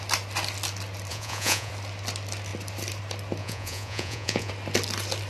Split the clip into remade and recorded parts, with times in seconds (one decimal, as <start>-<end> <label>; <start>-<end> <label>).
0.0-1.1 recorded; 1.1-1.7 remade; 1.7-3.4 recorded; 3.4-4.5 remade; 4.5-5.3 recorded